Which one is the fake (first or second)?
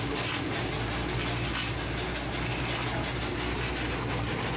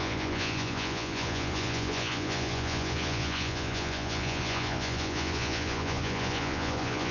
second